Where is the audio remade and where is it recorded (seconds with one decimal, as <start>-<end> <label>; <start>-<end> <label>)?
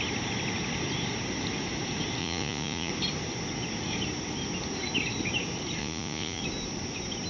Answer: 0.0-2.2 recorded; 2.2-2.9 remade; 2.9-5.8 recorded; 5.8-6.4 remade; 6.4-7.3 recorded